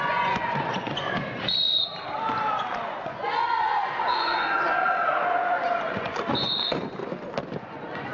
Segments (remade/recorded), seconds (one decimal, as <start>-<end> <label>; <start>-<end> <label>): 0.0-1.9 remade; 1.9-2.6 recorded; 2.6-7.0 remade; 7.0-7.6 recorded; 7.6-8.1 remade